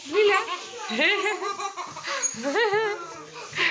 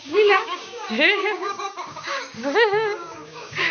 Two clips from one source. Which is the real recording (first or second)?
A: first